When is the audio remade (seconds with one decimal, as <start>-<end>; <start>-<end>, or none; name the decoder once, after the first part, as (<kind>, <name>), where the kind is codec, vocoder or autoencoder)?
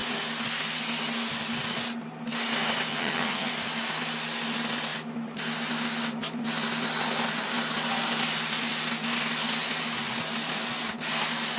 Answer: 2.9-3.5 (vocoder, HiFi-GAN)